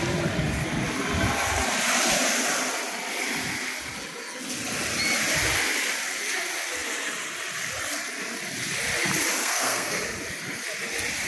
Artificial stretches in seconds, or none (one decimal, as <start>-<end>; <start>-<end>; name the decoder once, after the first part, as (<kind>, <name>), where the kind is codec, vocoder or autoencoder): 9.4-10.0 (codec, SNAC)